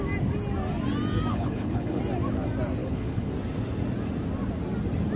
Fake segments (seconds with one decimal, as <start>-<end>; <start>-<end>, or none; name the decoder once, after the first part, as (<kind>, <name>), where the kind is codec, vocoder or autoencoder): 1.3-2.0 (codec, HILCodec); 2.8-3.3